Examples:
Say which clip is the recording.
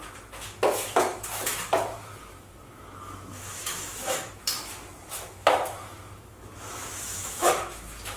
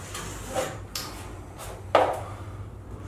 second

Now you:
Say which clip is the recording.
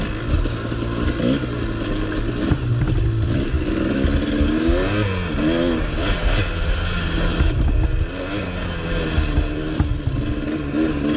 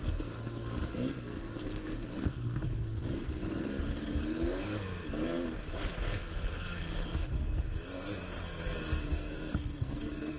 first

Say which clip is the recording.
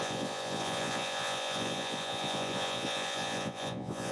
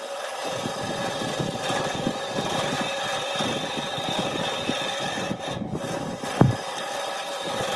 second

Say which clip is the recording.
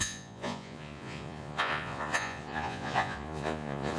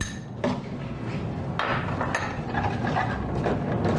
second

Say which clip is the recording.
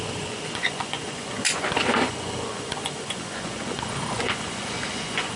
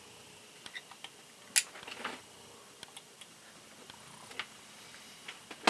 second